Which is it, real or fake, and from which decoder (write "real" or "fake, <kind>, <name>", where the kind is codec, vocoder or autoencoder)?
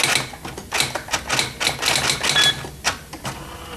real